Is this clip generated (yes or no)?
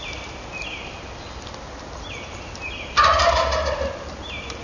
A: no